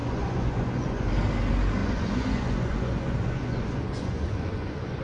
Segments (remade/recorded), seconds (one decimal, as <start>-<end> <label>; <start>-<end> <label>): 0.0-1.1 remade; 1.1-1.8 recorded; 1.8-5.0 remade